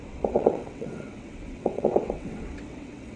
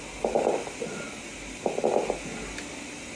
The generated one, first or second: first